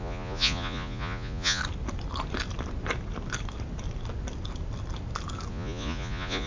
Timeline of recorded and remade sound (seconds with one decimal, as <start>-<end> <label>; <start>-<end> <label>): 0.0-1.6 remade; 1.6-5.5 recorded; 5.5-6.5 remade